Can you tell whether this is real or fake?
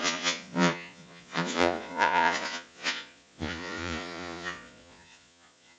fake